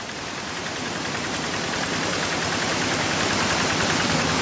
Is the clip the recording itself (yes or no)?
yes